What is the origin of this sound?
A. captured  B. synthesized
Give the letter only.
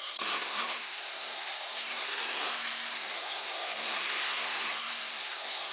B